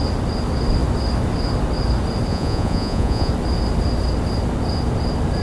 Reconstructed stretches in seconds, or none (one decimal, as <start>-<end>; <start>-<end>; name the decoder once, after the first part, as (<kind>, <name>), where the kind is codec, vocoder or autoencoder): 2.3-3.3 (vocoder, Vocos)

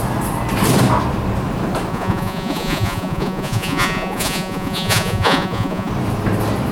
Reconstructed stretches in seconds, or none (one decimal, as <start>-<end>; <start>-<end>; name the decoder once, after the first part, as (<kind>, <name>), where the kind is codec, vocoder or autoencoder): 1.9-5.9 (vocoder, Vocos)

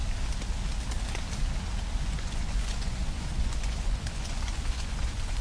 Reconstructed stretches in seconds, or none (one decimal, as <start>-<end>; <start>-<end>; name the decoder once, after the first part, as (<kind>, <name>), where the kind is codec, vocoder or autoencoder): 2.0-5.4 (vocoder, Vocos)